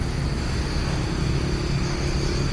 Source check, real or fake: real